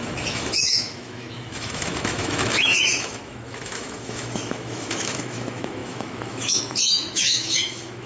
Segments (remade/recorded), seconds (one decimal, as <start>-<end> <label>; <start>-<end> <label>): 0.0-8.1 remade

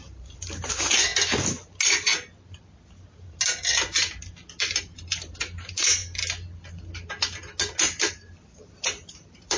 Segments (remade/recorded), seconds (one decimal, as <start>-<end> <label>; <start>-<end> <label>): 0.0-1.1 remade; 1.1-4.8 recorded; 4.8-6.0 remade; 6.0-8.1 recorded; 8.1-9.6 remade

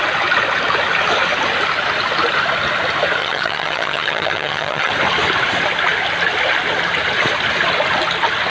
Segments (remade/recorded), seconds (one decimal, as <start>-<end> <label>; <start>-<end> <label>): 0.0-3.2 recorded; 3.2-4.9 remade; 4.9-8.5 recorded

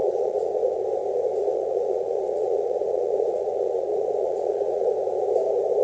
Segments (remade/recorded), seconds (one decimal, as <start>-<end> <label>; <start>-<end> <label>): 0.0-0.8 remade; 0.8-1.4 recorded; 1.4-4.9 remade; 4.9-5.8 recorded

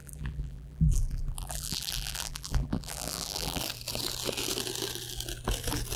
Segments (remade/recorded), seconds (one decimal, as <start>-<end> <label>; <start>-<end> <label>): 0.0-3.6 remade; 3.6-6.0 recorded

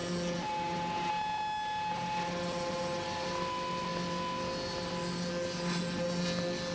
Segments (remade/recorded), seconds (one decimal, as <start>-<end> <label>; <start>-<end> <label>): 0.0-6.7 recorded

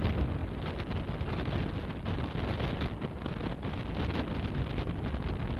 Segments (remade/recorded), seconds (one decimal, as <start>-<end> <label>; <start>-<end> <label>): 0.0-5.6 recorded